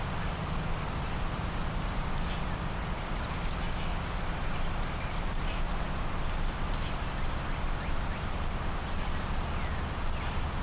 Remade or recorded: recorded